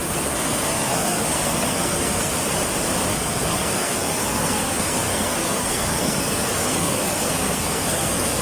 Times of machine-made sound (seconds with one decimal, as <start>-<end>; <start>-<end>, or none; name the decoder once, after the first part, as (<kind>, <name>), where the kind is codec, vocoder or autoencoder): 0.0-2.4 (codec, SNAC); 3.1-8.4